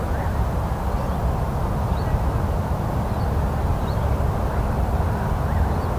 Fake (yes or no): no